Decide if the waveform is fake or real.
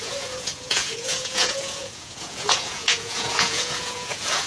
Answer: fake